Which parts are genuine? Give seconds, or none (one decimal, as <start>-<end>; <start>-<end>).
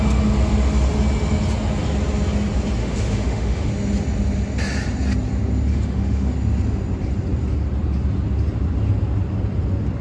0.0-2.8; 3.7-5.7; 6.3-10.0